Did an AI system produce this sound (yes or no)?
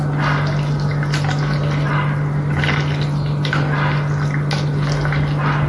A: no